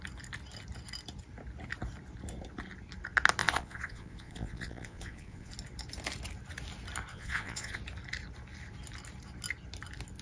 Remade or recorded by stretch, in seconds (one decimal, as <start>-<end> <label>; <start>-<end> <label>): 0.0-3.4 recorded; 3.4-5.5 remade; 5.5-7.1 recorded; 7.1-7.8 remade; 7.8-10.2 recorded